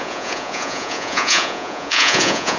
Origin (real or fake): fake